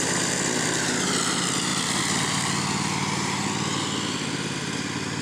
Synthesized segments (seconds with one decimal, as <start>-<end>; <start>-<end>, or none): none